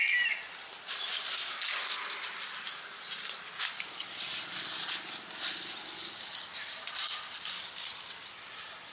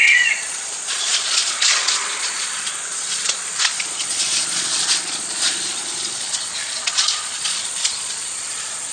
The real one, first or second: first